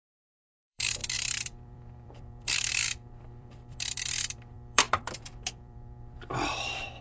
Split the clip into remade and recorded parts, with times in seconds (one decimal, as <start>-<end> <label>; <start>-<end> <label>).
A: 0.0-7.0 remade